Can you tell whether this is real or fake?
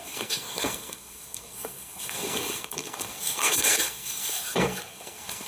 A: fake